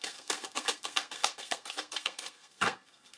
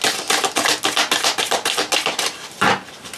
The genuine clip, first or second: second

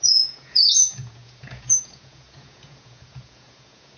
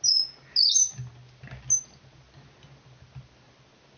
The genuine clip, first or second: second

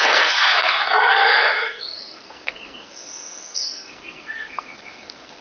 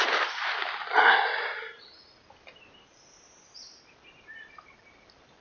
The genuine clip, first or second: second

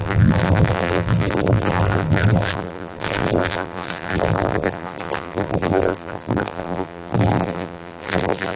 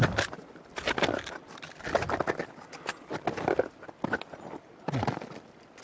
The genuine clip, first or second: second